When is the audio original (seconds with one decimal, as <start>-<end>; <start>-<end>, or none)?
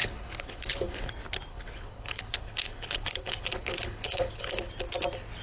1.1-1.5; 4.7-5.4